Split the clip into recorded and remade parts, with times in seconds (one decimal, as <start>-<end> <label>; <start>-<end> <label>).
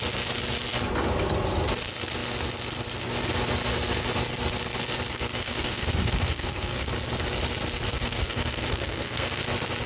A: 0.0-5.1 recorded; 5.1-6.9 remade; 6.9-7.9 recorded; 7.9-9.4 remade; 9.4-9.9 recorded